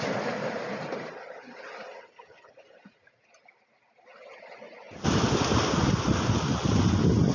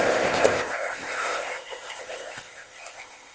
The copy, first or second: second